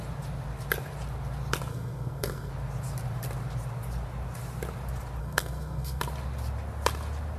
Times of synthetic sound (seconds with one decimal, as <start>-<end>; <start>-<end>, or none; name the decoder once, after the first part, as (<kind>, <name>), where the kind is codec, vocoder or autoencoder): 1.7-2.5 (codec, SNAC); 5.2-6.0